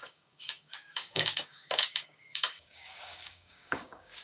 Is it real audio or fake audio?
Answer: fake